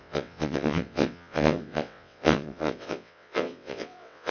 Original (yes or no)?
no